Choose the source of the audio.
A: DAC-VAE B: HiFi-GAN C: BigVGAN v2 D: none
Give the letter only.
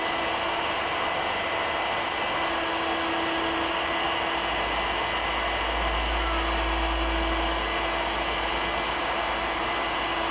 D